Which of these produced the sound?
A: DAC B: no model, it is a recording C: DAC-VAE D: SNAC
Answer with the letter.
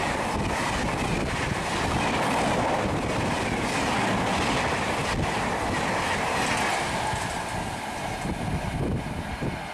B